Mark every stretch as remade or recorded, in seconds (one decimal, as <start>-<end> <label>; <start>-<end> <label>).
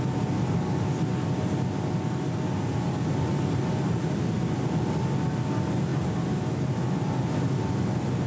0.0-8.3 recorded